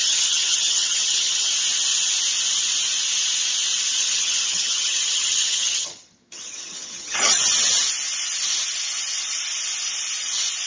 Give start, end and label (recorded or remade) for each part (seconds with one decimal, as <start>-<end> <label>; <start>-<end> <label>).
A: 0.0-1.5 remade; 1.5-4.0 recorded; 4.0-7.4 remade; 7.4-10.7 recorded